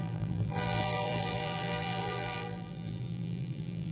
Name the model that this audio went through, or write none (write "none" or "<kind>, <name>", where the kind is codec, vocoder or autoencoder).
vocoder, BigVGAN v2